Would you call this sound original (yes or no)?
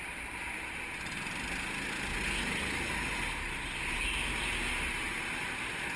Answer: yes